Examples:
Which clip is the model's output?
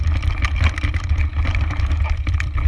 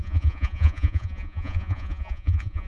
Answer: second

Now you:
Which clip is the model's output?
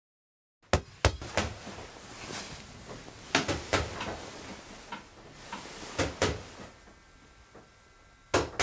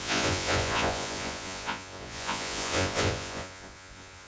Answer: second